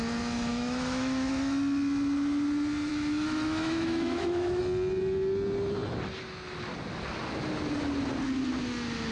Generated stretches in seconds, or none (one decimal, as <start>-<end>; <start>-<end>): 0.5-1.3; 2.9-4.6